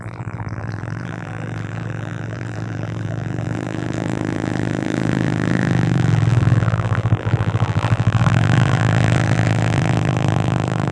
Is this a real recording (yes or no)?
no